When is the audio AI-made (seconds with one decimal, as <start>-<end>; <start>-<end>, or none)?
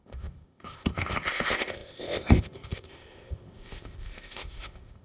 0.0-5.0